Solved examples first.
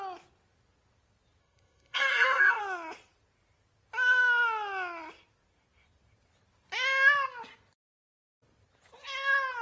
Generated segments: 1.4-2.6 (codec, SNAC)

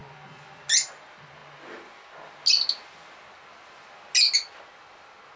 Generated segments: none

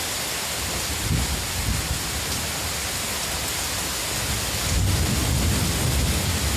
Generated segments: none